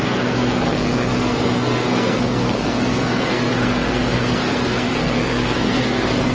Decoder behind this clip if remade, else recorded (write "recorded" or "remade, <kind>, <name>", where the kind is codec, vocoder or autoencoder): remade, codec, SNAC